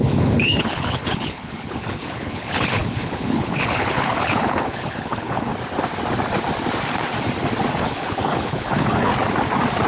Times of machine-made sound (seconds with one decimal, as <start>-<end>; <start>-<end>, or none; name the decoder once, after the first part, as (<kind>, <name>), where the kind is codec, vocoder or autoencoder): 0.0-5.5 (codec, HILCodec); 7.8-9.1